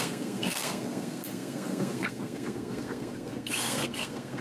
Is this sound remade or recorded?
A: remade